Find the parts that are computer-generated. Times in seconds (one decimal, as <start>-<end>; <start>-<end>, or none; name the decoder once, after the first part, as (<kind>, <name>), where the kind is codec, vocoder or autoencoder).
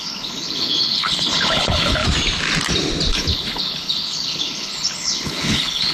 0.0-2.0 (codec, HILCodec); 3.1-5.9